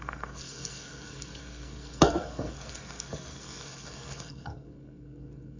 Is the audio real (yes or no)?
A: no